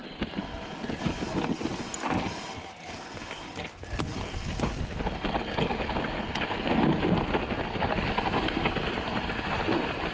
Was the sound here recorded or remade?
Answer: recorded